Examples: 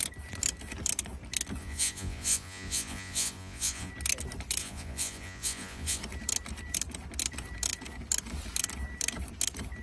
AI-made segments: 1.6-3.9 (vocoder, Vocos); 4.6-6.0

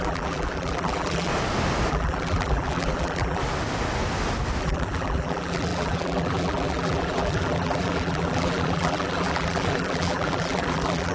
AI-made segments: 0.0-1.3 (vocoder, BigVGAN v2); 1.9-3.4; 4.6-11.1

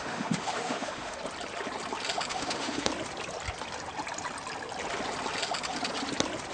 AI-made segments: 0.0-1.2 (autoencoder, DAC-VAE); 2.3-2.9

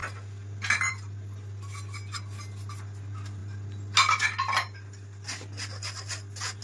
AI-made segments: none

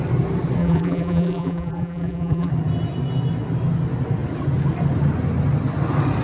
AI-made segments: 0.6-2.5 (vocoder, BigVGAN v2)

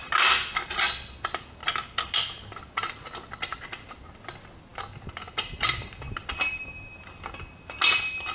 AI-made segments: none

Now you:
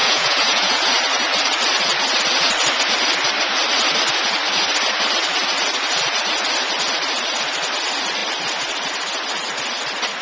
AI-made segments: 0.0-0.9 (vocoder, Vocos)